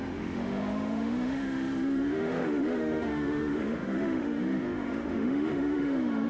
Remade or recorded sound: remade